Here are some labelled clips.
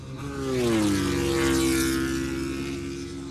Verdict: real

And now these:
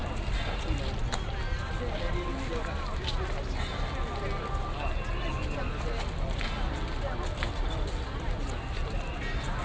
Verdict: real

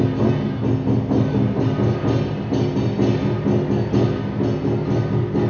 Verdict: real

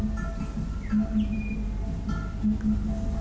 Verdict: real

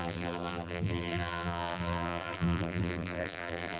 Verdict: fake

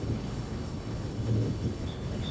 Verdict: fake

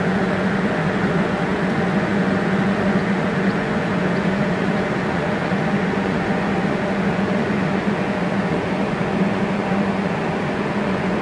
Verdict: fake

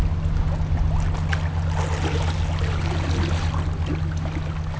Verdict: real